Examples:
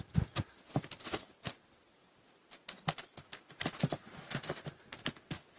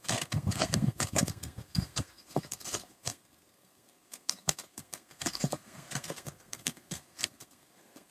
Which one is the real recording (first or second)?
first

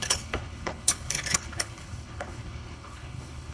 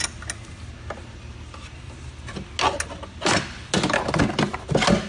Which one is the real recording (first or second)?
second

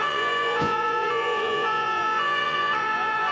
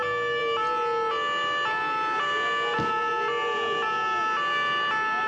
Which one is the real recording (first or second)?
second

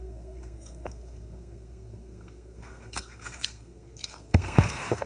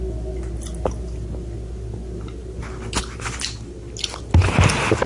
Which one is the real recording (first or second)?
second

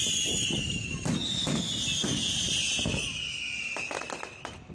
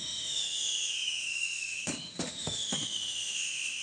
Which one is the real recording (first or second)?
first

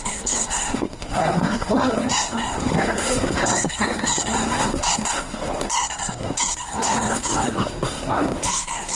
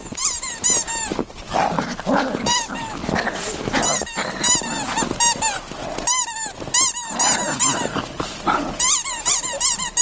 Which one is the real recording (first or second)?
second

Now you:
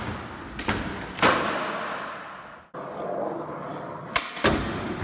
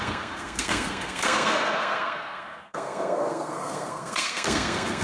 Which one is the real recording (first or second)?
first